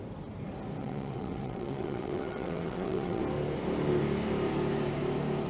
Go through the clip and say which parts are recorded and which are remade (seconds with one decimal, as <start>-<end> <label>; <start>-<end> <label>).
0.0-0.8 recorded; 0.8-3.2 remade; 3.2-5.5 recorded